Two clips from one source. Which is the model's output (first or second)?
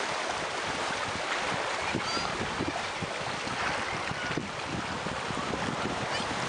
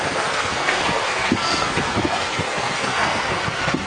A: second